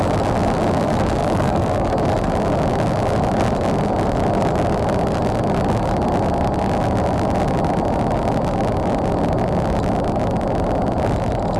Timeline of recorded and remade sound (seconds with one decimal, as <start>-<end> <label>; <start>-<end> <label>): 0.0-1.2 recorded; 1.2-1.9 remade; 1.9-11.6 recorded